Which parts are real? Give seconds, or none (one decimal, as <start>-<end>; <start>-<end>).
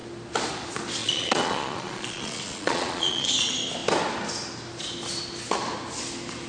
0.0-1.0; 3.3-6.5